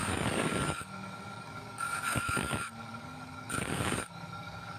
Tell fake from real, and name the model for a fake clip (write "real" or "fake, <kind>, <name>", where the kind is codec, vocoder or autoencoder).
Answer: fake, codec, DAC